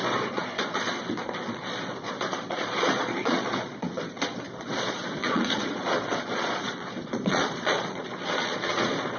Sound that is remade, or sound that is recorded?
remade